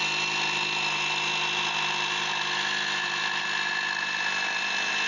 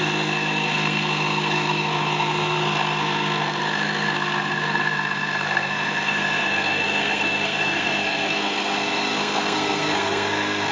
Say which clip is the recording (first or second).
first